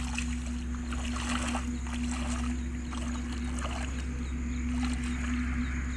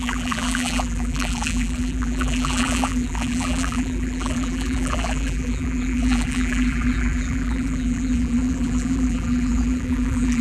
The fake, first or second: second